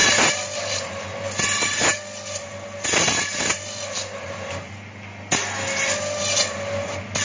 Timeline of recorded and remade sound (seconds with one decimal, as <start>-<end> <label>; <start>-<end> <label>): 0.0-7.2 recorded